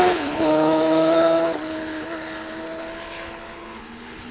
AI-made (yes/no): yes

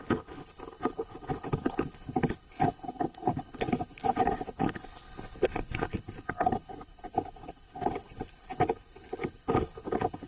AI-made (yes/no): yes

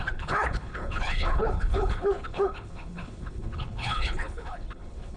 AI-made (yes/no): yes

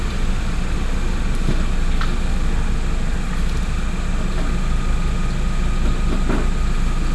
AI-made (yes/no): no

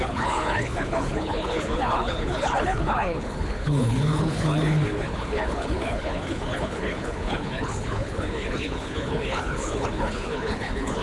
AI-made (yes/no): yes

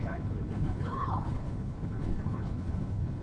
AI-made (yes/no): yes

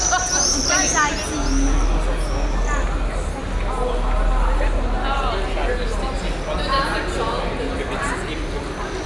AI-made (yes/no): no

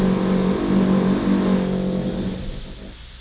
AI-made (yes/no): no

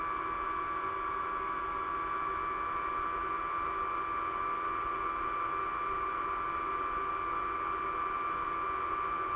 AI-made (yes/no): no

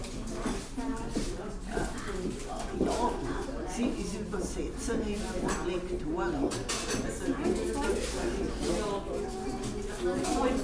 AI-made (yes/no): no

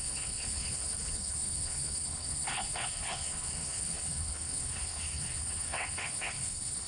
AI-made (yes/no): yes